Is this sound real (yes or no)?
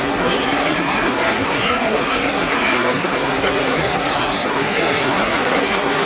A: no